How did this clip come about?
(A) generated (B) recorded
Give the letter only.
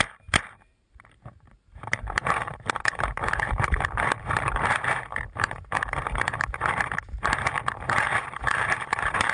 A